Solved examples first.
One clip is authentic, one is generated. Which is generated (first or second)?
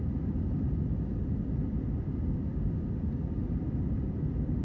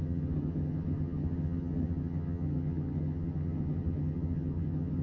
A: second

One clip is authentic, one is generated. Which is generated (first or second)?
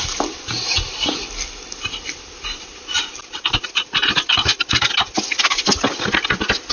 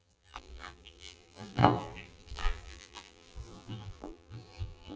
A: second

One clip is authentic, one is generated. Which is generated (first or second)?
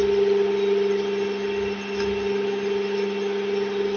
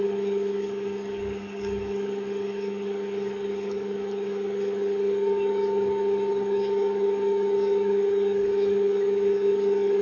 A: second